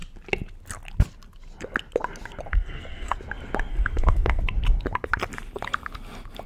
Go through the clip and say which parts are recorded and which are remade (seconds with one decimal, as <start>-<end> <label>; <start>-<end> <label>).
0.0-2.5 recorded; 2.5-3.2 remade; 3.2-3.7 recorded; 3.7-4.4 remade; 4.4-6.5 recorded